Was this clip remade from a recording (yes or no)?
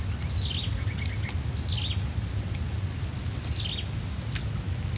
no